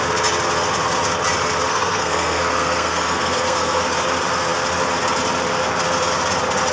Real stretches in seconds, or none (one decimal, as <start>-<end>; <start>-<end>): 0.0-1.7; 3.8-6.7